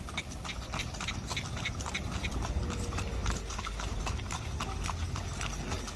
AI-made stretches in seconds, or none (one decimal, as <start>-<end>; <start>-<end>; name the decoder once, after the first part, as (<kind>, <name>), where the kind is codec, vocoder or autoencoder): none